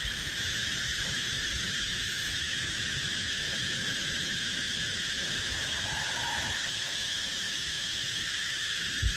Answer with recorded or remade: remade